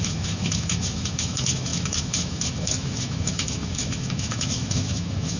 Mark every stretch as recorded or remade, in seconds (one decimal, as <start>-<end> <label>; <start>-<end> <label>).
0.0-5.4 remade